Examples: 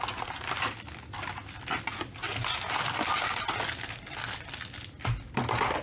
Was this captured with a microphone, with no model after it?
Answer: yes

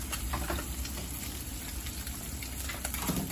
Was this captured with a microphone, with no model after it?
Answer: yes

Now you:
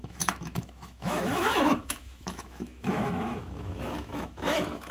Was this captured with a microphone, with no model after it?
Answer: no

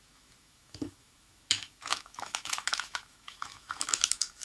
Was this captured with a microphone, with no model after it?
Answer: no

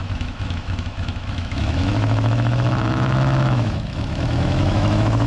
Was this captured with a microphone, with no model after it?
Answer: no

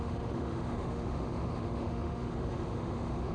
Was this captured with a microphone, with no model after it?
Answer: no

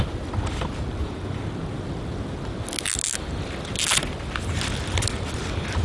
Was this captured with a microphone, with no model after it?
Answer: yes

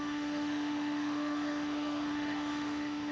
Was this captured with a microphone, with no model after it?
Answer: no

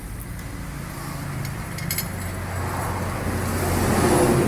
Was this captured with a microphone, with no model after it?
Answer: yes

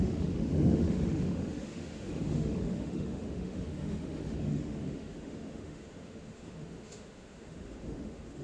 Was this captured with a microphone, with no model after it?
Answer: no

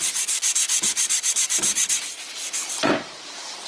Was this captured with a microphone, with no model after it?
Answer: yes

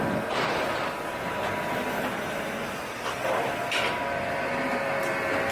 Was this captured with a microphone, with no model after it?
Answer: yes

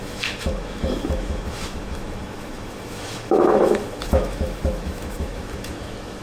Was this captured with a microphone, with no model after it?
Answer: no